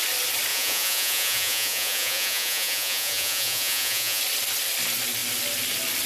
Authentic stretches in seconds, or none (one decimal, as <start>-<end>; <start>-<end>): 0.0-0.5; 4.2-6.1

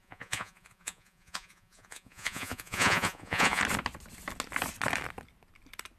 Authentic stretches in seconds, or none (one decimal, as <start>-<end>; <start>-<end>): 3.6-6.0

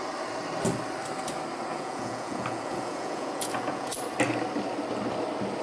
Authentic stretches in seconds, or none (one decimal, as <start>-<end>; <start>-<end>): 0.0-1.7; 3.9-5.6

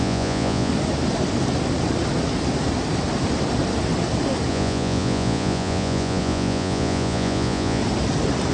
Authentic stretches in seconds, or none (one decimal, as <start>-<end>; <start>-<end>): 0.7-4.5; 7.8-8.5